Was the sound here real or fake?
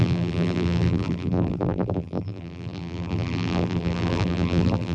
fake